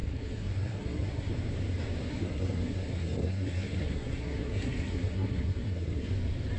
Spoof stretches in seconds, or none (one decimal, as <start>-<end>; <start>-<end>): 0.0-1.3; 2.1-6.1